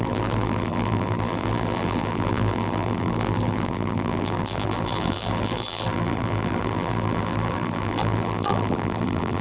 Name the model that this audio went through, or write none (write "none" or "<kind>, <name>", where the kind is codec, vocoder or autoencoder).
vocoder, BigVGAN v2